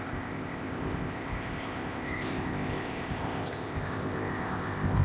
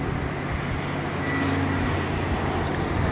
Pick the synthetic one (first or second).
first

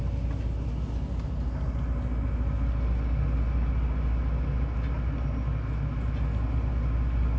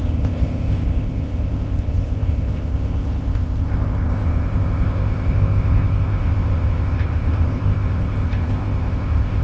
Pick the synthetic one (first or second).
second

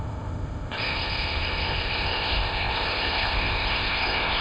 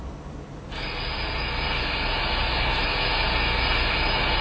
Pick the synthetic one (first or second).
first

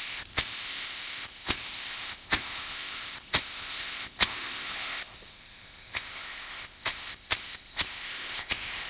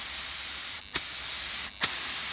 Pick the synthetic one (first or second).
first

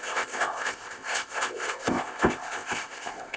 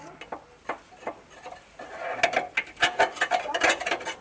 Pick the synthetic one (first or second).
first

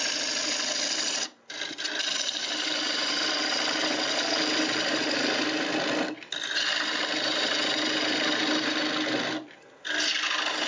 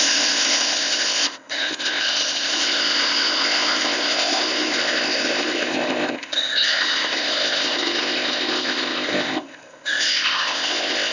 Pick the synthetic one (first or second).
second